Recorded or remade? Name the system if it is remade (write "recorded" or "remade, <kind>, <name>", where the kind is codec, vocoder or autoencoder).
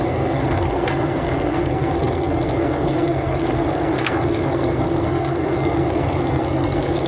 remade, codec, SNAC